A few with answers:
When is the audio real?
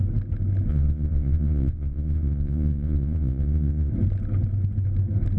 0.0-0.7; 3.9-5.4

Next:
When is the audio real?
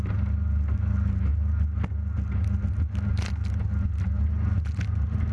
0.0-5.3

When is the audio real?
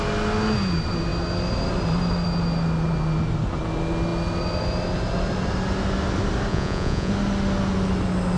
0.0-6.5; 7.1-8.4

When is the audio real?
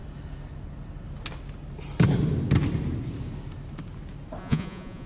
0.0-4.4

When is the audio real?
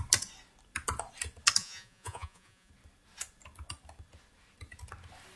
0.0-1.6; 2.7-5.4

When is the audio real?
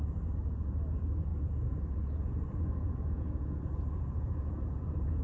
none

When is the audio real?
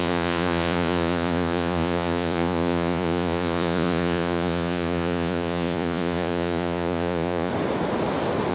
7.5-8.5